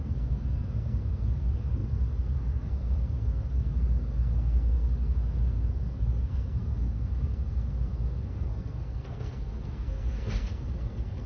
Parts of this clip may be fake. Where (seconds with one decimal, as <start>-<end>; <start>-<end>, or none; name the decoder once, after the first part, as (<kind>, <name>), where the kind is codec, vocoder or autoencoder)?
0.0-11.3 (codec, SNAC)

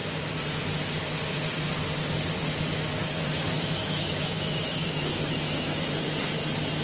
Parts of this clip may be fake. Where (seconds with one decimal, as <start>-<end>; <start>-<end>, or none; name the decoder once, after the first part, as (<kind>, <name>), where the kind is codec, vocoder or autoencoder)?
3.0-6.0 (autoencoder, DAC-VAE)

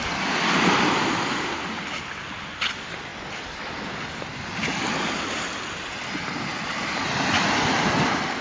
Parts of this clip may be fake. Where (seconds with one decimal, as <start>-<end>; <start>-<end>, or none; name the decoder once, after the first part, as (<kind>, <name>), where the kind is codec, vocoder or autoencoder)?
none

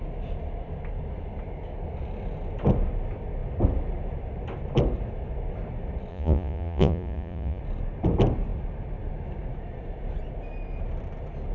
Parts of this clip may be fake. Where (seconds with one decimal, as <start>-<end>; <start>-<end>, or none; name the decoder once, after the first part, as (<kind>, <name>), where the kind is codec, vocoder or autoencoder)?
6.1-7.6 (vocoder, Vocos)